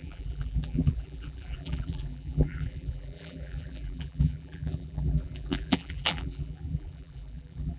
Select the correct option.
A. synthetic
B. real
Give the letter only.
A